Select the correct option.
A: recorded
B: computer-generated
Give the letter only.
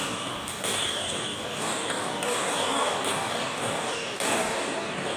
B